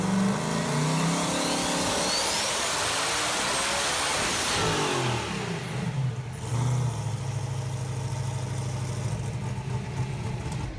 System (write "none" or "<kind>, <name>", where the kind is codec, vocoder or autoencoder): none